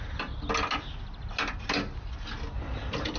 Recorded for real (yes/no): yes